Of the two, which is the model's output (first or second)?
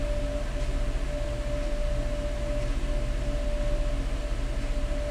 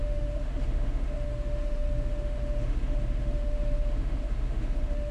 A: second